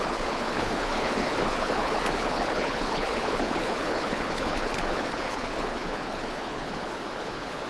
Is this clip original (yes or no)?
no